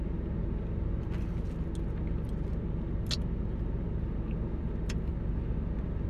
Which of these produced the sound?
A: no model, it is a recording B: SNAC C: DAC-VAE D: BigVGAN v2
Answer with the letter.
A